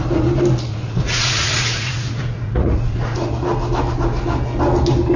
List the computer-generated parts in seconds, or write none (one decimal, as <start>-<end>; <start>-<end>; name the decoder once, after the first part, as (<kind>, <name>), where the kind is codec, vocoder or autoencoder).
0.7-3.3 (vocoder, Vocos)